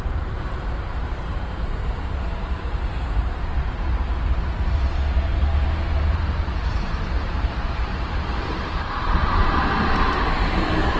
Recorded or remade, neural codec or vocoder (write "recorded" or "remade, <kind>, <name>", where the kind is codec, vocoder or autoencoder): remade, vocoder, BigVGAN v2